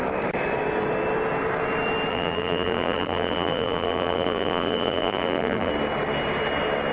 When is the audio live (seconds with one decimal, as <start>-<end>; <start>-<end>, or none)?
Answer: 0.0-2.1; 5.7-6.9